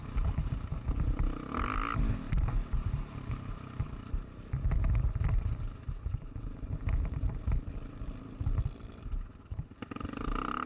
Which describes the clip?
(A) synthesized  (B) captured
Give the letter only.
B